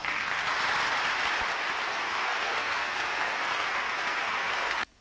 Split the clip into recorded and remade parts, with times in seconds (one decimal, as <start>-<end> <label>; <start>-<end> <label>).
0.0-0.5 remade; 0.5-1.9 recorded; 1.9-5.0 remade